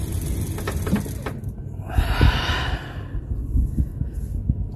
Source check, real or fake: real